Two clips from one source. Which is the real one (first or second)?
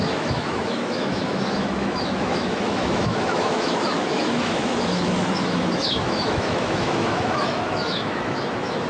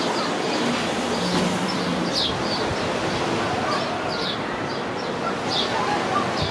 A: second